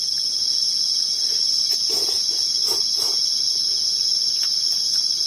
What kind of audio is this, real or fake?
fake